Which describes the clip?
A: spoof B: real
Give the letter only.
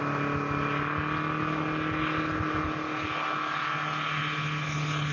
B